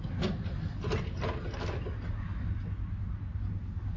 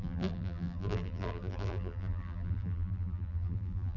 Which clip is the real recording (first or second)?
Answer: first